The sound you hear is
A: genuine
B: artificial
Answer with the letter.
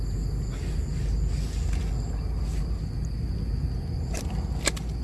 A